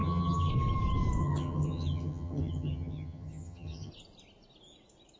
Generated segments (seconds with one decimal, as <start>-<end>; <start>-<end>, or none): 0.0-0.5; 1.2-3.9